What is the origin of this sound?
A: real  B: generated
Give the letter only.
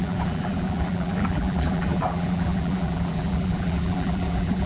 B